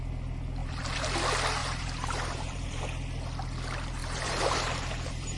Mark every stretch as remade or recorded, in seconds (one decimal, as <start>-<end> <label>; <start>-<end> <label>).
0.0-0.6 recorded; 0.6-1.2 remade; 1.2-1.6 recorded; 1.6-2.8 remade; 2.8-4.0 recorded; 4.0-5.4 remade